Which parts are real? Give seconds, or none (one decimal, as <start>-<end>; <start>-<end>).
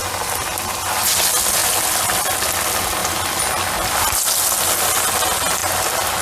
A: 0.0-6.2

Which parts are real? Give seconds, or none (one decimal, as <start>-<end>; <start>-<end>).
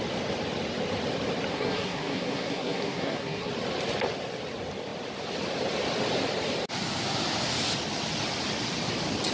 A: 0.0-1.5; 3.5-9.3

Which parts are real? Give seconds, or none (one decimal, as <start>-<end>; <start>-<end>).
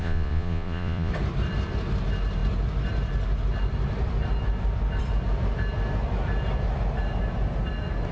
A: 1.1-8.1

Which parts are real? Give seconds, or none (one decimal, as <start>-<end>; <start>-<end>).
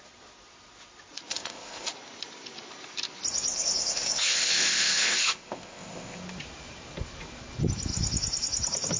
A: 0.0-1.3; 1.9-3.5; 6.2-9.0